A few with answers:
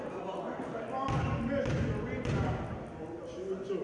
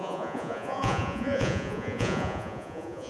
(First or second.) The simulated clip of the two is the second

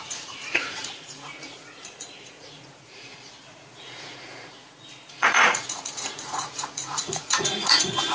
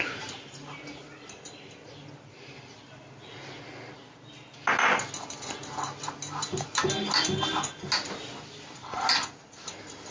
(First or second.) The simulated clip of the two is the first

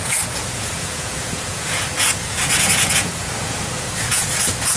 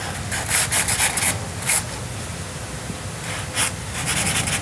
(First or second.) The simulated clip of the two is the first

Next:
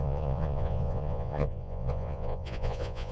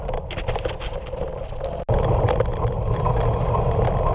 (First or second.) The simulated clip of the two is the first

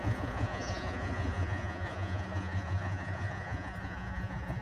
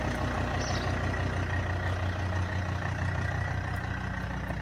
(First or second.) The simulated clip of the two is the first